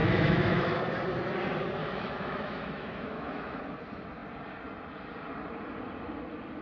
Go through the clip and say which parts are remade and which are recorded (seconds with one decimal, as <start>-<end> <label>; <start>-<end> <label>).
0.0-0.8 remade; 0.8-1.8 recorded; 1.8-3.6 remade; 3.6-6.6 recorded